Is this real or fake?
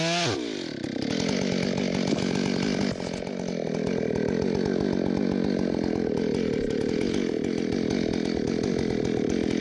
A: real